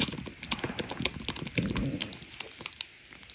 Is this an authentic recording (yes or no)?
yes